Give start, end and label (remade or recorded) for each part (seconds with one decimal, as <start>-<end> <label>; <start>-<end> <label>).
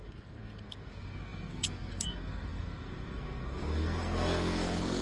0.0-5.0 remade